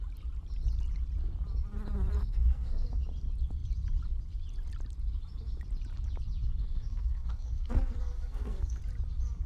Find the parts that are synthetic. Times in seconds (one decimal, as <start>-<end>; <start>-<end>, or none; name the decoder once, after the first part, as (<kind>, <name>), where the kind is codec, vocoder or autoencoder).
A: 2.2-2.9 (codec, SNAC); 6.6-8.8